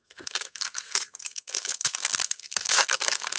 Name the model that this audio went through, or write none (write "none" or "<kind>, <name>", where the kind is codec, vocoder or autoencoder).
codec, SNAC